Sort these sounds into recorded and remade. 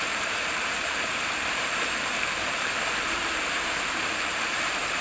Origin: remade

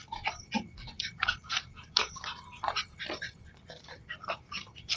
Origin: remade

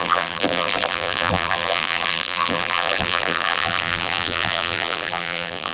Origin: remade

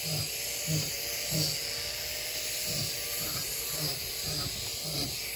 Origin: recorded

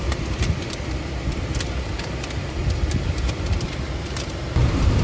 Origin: remade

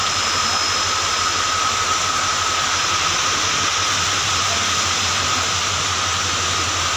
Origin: recorded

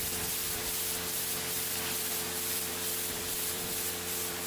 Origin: remade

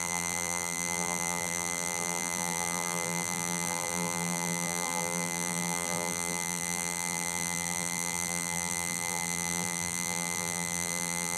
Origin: remade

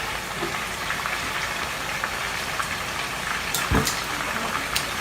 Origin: recorded